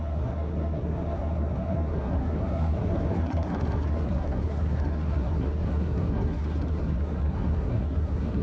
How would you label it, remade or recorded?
remade